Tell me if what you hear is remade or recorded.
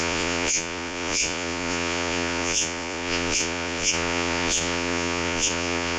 remade